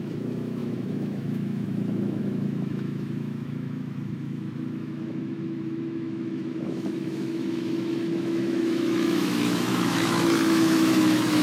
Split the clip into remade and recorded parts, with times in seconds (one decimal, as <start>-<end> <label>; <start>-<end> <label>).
0.0-11.4 remade